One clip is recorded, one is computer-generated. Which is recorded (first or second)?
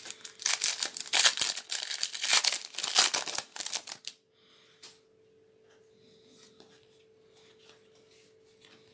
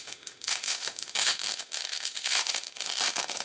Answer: first